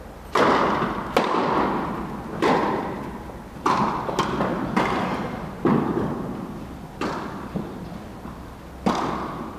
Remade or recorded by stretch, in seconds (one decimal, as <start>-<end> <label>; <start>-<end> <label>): 0.0-4.5 recorded; 4.5-5.2 remade; 5.2-9.6 recorded